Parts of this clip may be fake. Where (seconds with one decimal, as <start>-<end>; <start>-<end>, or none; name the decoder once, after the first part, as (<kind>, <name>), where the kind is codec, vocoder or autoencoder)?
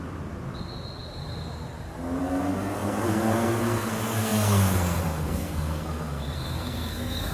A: 2.2-7.3 (codec, SNAC)